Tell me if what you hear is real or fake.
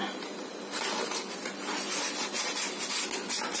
real